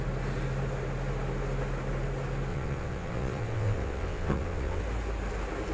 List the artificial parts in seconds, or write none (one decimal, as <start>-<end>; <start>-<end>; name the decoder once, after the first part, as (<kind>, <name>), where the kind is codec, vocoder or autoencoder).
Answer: 2.5-4.8 (vocoder, WaveNeXt)